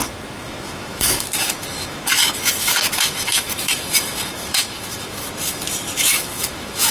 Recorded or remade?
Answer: remade